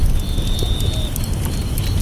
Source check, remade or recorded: recorded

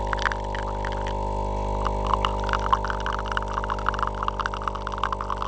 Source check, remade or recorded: recorded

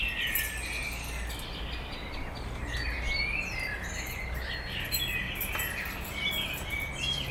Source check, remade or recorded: recorded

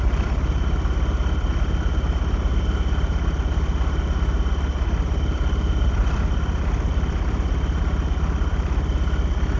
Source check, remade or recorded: recorded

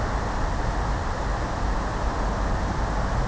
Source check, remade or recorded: recorded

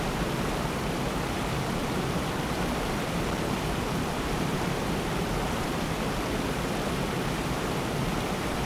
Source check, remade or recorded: remade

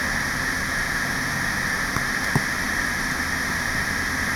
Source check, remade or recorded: recorded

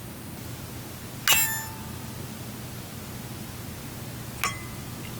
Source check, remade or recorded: recorded